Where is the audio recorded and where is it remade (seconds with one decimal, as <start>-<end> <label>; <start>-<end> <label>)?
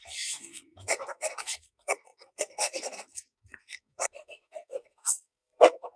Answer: 0.0-6.0 remade